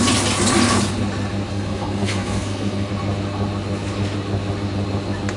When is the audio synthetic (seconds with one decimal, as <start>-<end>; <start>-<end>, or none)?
1.5-2.9